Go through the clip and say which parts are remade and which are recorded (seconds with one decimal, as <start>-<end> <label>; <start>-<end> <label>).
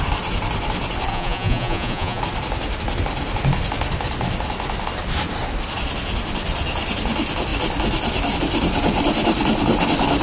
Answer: 0.0-1.1 recorded; 1.1-2.2 remade; 2.2-10.2 recorded